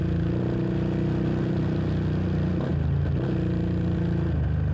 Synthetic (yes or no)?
no